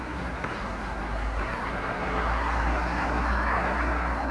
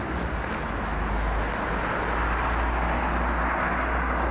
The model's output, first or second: first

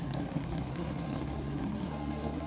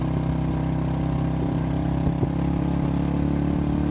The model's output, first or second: first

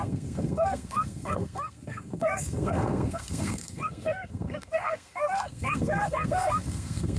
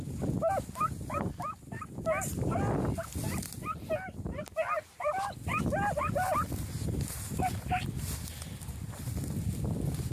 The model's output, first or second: first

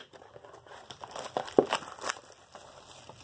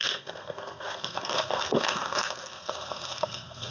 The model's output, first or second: second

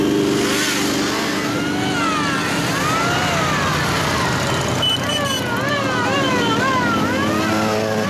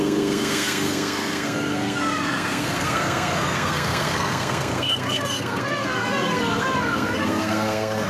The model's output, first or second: second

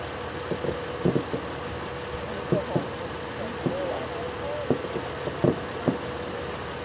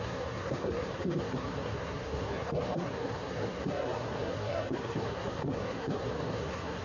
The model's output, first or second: second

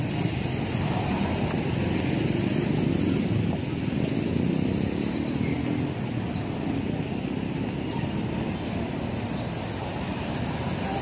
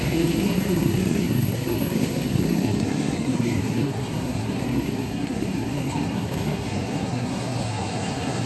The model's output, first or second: second